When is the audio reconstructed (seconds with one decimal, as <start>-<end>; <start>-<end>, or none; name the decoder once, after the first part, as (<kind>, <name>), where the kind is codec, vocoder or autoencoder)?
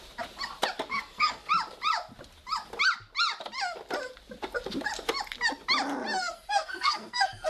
0.9-1.5 (codec, SNAC); 6.2-7.5